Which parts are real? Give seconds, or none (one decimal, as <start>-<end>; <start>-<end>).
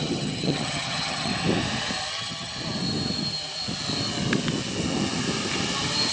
1.3-2.1; 2.5-6.1